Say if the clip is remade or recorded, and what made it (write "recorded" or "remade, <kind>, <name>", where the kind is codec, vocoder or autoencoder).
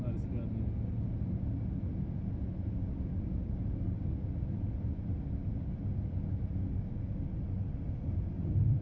recorded